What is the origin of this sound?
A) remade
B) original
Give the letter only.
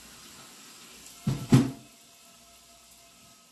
B